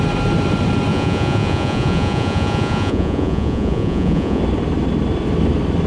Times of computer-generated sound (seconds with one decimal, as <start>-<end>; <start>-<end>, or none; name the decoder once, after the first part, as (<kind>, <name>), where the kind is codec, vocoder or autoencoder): 0.9-4.4 (vocoder, Vocos)